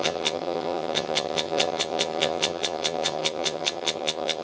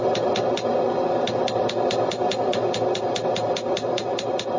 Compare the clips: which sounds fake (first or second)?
first